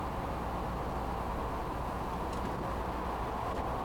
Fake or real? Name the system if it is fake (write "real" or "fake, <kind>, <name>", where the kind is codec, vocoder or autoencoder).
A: real